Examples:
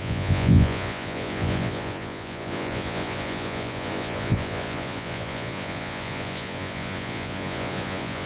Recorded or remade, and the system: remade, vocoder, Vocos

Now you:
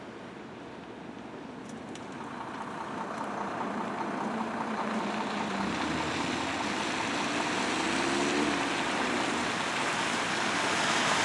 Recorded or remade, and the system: recorded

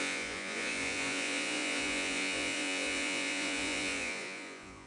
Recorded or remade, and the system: remade, vocoder, Vocos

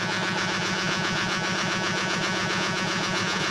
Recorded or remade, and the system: remade, vocoder, Vocos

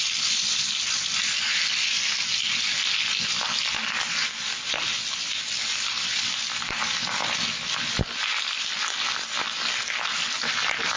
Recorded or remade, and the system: recorded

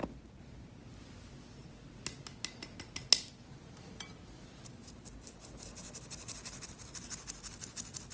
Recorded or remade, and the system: recorded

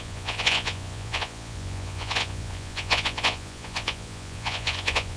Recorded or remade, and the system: remade, vocoder, Vocos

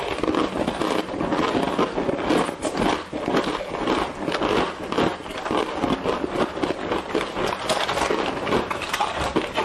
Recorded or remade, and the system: recorded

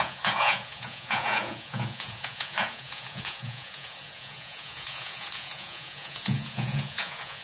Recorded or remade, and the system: remade, vocoder, Vocos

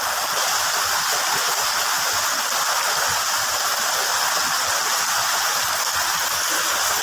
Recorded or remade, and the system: recorded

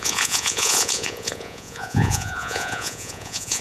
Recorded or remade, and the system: remade, vocoder, Vocos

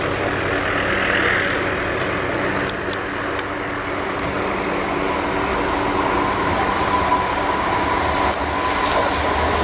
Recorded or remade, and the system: recorded